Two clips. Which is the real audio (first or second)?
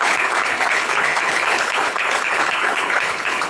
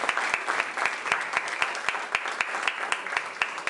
second